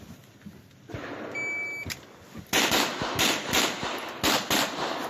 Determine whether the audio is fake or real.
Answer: real